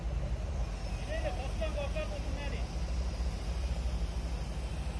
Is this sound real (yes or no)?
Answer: yes